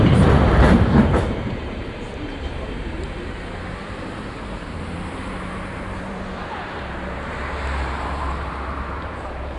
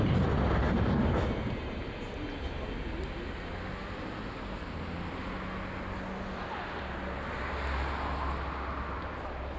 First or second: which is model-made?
first